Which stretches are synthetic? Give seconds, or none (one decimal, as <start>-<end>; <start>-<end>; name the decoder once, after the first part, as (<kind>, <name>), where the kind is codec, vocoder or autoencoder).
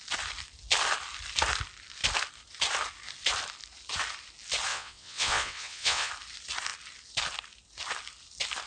4.7-6.1 (vocoder, WaveNeXt)